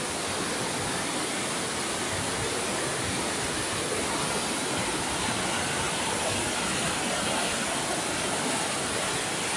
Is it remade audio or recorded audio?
recorded